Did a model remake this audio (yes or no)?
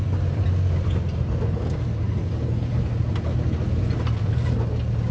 no